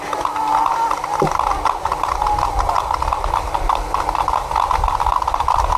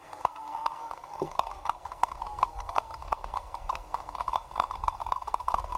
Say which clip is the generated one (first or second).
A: second